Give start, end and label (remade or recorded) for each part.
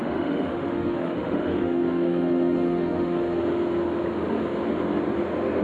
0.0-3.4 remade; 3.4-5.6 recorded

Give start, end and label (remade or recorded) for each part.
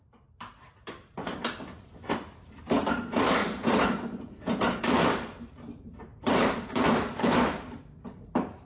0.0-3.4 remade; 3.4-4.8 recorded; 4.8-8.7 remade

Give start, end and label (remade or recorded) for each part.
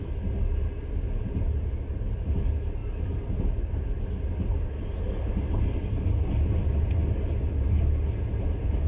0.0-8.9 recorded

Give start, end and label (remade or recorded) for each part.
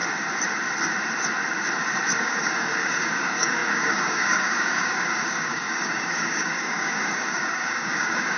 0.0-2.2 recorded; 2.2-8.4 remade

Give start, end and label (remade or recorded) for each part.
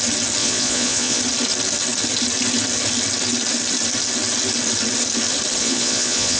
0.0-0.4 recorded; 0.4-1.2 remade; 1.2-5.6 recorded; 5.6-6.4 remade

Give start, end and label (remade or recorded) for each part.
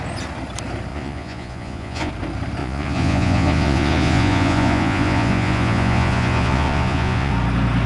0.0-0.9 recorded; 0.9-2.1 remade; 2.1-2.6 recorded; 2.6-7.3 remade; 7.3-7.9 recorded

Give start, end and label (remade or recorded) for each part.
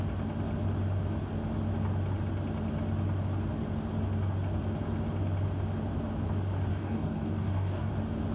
0.0-6.7 recorded; 6.7-7.9 remade; 7.9-8.3 recorded